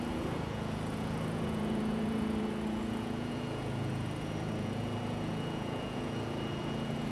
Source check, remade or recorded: remade